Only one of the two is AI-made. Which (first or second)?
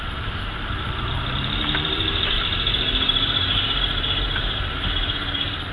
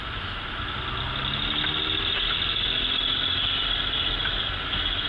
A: first